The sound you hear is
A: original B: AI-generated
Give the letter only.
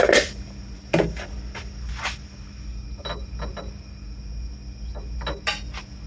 A